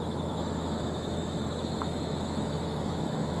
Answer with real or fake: fake